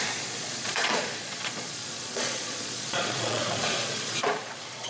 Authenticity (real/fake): fake